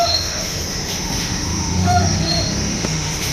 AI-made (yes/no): yes